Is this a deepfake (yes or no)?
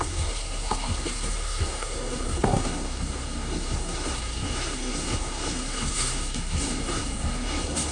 yes